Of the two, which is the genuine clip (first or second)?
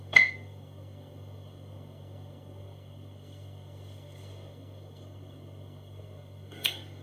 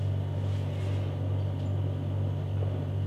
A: second